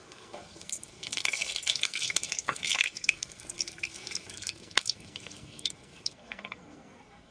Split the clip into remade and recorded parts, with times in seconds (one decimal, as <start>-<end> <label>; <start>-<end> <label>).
0.0-7.3 remade